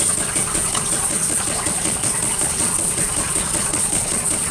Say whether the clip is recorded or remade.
remade